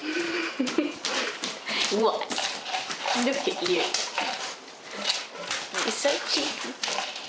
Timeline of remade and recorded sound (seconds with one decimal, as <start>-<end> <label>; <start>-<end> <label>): 0.0-4.4 remade; 4.4-6.1 recorded; 6.1-7.3 remade

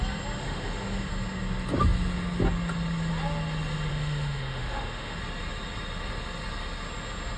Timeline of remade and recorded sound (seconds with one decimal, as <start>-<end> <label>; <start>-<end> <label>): 0.0-0.4 recorded; 0.4-1.1 remade; 1.1-3.9 recorded; 3.9-5.2 remade; 5.2-7.4 recorded

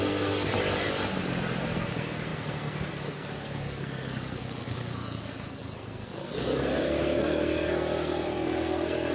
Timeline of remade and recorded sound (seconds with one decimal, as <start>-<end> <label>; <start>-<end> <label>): 0.0-0.5 remade; 0.5-1.6 recorded; 1.6-9.1 remade

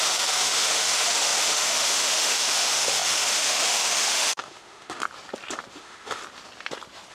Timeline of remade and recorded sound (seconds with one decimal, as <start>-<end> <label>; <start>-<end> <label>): 0.0-5.0 remade; 5.0-5.8 recorded; 5.8-6.2 remade; 6.2-7.1 recorded

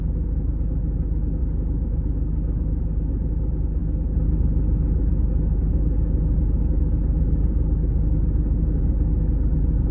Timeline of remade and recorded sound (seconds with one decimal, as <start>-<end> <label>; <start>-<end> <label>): 0.0-1.4 recorded; 1.4-2.8 remade; 2.8-9.9 recorded